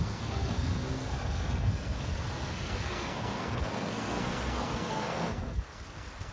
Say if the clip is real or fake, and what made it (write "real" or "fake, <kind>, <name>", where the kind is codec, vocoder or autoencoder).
fake, codec, SNAC